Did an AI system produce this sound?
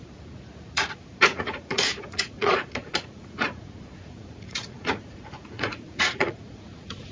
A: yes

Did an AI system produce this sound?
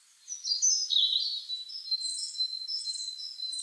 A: no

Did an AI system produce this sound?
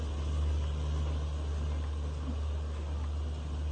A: no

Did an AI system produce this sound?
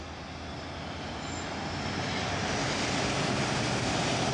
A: no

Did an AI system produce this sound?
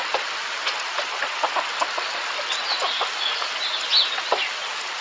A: no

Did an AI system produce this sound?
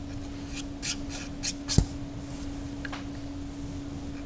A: no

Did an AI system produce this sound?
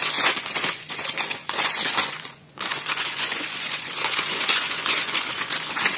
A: yes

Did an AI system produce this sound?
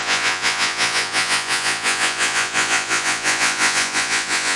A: yes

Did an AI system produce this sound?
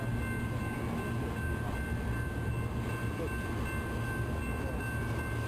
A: no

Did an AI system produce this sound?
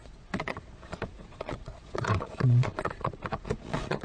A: yes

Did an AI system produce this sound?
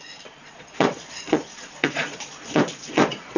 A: yes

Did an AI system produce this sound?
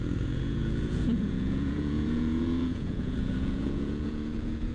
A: yes